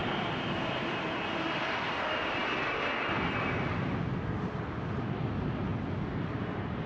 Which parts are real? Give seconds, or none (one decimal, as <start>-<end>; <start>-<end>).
0.0-6.9